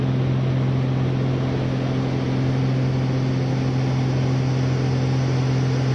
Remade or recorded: recorded